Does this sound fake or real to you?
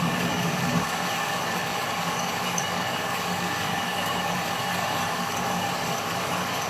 fake